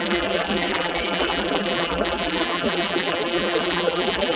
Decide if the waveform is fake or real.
fake